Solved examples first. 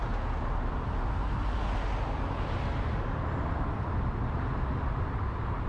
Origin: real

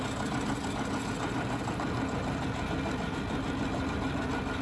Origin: real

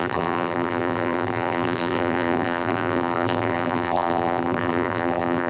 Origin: fake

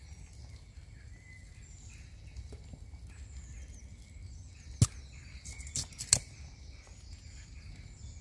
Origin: real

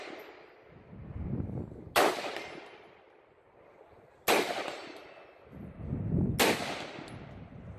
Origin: real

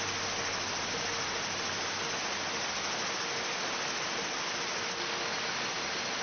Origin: real